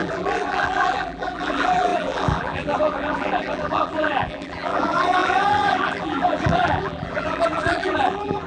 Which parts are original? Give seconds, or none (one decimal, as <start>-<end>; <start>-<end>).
none